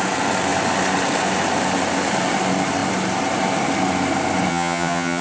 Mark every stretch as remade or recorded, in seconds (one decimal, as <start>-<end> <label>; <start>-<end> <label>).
0.0-4.5 recorded; 4.5-5.2 remade